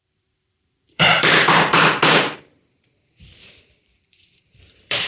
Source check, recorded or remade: remade